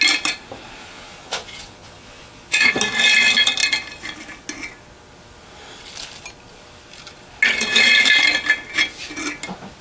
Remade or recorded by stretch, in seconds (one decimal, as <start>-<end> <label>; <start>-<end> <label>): 0.0-0.8 recorded; 0.8-2.7 remade; 2.7-9.8 recorded